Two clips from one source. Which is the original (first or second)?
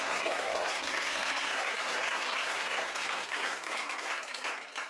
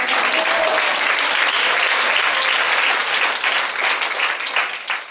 second